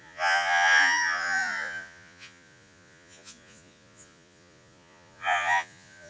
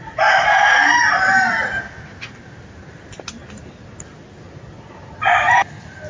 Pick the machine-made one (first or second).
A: first